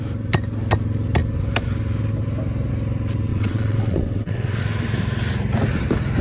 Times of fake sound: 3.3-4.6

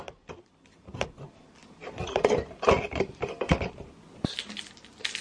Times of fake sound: none

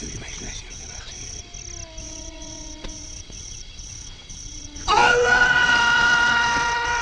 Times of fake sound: 0.0-1.4; 2.0-7.0

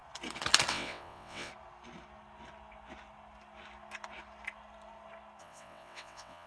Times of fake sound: 0.7-1.5; 5.4-6.5